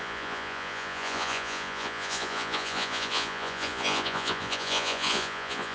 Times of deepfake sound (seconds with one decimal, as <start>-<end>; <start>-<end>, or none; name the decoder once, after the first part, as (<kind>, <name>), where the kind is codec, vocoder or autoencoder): 0.0-5.7 (vocoder, Vocos)